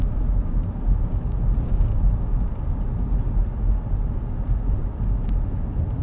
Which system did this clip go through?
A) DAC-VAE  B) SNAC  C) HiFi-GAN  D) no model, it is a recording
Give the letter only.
D